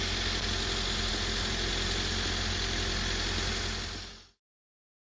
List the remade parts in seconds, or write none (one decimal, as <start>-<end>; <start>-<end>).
none

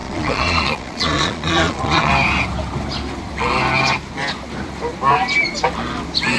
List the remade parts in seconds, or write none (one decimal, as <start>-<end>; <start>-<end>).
0.0-2.1

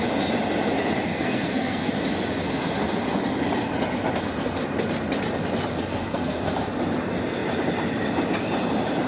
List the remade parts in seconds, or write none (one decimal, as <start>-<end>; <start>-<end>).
1.1-1.9; 5.9-6.5